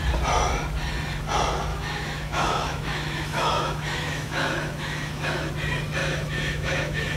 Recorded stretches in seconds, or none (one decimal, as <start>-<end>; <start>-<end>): 0.0-1.7; 5.5-6.0

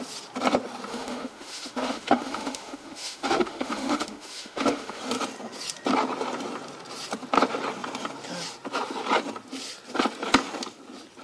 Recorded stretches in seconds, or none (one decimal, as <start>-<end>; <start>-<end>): 0.0-0.9; 5.0-11.2

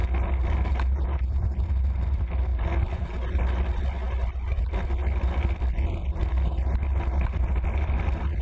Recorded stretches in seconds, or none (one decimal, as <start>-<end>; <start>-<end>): 0.0-8.4

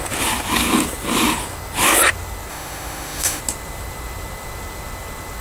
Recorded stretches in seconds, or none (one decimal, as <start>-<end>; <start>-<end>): 0.0-2.5; 3.4-5.4

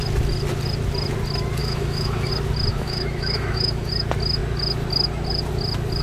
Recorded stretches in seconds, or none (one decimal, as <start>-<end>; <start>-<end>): 0.0-1.6; 2.3-2.7; 3.9-6.0

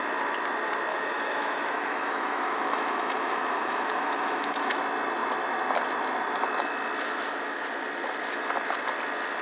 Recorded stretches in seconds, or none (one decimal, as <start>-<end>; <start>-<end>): 0.0-0.9; 4.8-9.4